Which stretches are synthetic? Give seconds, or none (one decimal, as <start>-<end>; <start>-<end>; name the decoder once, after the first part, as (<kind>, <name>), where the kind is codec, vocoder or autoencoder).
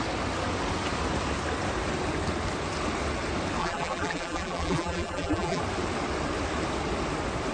3.6-5.6 (vocoder, BigVGAN v2)